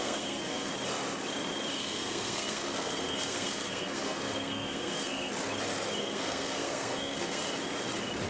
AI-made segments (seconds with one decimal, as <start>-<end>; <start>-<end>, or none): 0.0-0.7; 1.8-5.3; 6.0-7.4